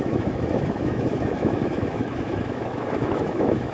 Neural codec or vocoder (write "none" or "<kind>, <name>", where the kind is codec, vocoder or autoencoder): autoencoder, DAC-VAE